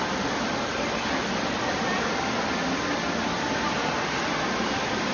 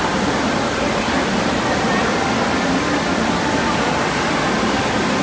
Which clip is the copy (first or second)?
second